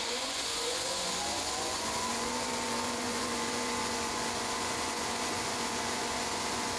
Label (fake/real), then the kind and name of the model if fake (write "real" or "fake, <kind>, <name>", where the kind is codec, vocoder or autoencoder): fake, vocoder, Vocos